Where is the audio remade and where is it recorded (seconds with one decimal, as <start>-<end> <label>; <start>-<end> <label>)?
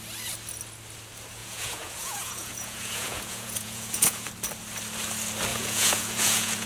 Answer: 0.0-1.4 recorded; 1.4-4.3 remade; 4.3-5.5 recorded; 5.5-6.7 remade